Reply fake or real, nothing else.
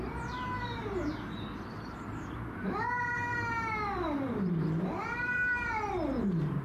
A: fake